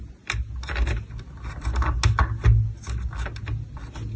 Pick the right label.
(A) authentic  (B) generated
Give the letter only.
A